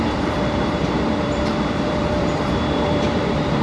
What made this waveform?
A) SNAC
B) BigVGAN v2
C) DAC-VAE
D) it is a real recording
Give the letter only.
B